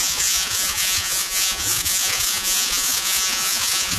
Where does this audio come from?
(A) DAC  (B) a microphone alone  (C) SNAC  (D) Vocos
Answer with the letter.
D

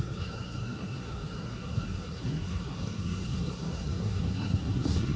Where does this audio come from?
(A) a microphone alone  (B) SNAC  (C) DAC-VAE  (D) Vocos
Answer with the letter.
B